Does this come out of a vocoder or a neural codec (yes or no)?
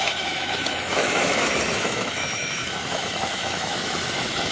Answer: yes